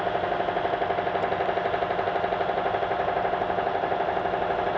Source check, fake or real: real